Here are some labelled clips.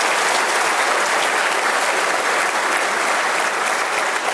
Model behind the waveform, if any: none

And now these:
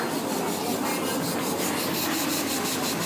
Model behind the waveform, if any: none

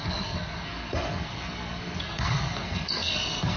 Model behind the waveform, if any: codec, SNAC